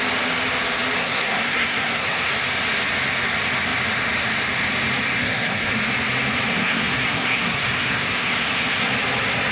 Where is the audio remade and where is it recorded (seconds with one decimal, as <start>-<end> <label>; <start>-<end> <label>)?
0.0-1.0 recorded; 1.0-2.3 remade; 2.3-5.2 recorded; 5.2-5.7 remade; 5.7-6.5 recorded; 6.5-8.9 remade; 8.9-9.5 recorded